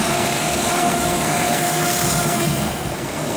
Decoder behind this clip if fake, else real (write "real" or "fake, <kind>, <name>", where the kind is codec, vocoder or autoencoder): fake, codec, SNAC